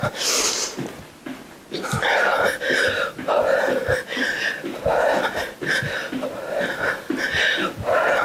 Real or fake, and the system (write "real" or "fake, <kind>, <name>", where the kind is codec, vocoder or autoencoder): real